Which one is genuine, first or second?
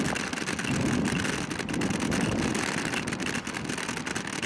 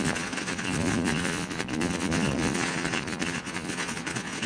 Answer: first